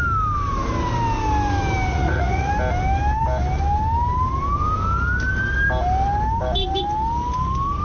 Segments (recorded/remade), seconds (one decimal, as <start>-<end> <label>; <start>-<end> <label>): 0.0-1.9 recorded; 1.9-2.5 remade; 2.5-7.8 recorded